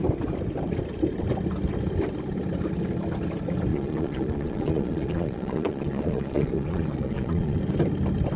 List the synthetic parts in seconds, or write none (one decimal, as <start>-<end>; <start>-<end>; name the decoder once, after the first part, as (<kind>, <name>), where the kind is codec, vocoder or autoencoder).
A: 3.7-7.6 (vocoder, Vocos)